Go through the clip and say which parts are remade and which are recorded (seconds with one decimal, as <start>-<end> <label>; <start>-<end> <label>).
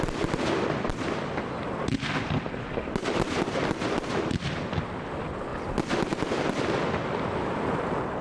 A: 0.0-8.2 recorded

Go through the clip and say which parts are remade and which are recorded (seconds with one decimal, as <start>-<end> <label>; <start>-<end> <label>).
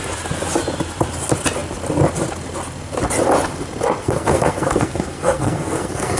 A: 0.0-4.0 recorded; 4.0-6.2 remade